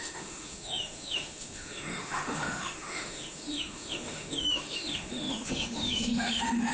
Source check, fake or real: fake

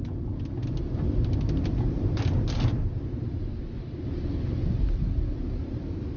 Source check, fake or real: real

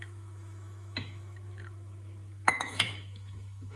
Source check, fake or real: fake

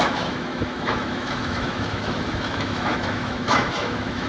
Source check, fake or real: fake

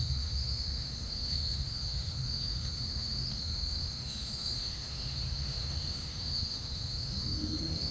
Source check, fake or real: fake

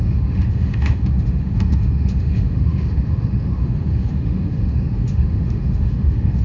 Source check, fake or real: fake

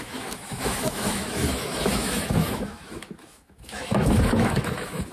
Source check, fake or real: fake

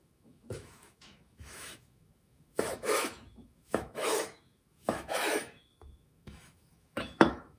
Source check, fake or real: fake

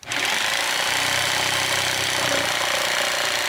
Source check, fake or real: real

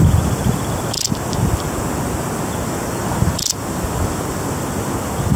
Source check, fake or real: real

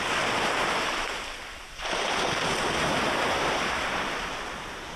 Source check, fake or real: real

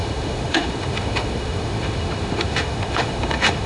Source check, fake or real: fake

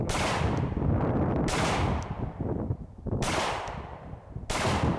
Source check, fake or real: real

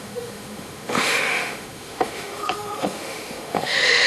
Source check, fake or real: fake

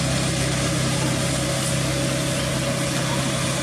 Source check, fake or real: real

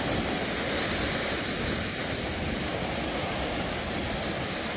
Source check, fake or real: real